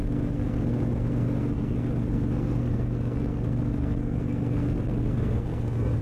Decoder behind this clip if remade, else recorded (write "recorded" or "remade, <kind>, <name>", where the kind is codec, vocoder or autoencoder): remade, codec, SNAC